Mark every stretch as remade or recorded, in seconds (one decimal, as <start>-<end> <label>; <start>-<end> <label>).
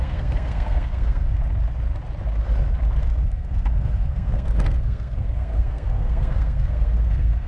0.0-1.4 remade; 1.4-3.0 recorded; 3.0-7.5 remade